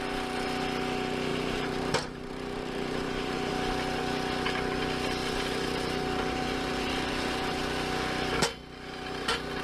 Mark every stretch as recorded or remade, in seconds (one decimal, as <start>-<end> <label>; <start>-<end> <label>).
0.0-1.3 recorded; 1.3-3.5 remade; 3.5-5.2 recorded; 5.2-7.6 remade; 7.6-9.6 recorded